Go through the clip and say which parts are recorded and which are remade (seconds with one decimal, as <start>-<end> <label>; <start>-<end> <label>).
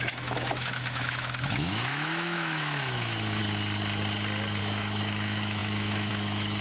0.0-3.4 remade; 3.4-4.6 recorded; 4.6-6.6 remade